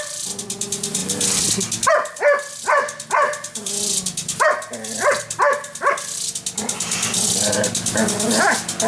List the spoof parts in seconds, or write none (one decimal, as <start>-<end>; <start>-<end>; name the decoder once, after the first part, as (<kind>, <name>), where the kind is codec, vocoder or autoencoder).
none

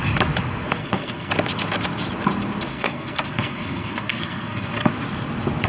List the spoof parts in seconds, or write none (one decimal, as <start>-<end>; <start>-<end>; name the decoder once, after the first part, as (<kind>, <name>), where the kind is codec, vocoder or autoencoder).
0.8-1.3 (codec, SNAC); 2.7-4.9

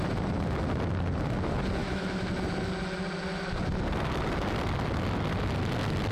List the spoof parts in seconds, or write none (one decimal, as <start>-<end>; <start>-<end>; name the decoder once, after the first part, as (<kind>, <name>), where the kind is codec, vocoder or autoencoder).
1.8-2.3 (autoencoder, DAC-VAE)

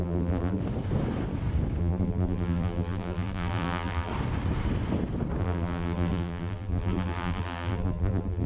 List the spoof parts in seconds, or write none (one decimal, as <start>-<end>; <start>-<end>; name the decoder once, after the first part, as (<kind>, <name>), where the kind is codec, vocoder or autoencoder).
0.0-0.6 (vocoder, BigVGAN v2); 1.8-4.1; 5.4-8.5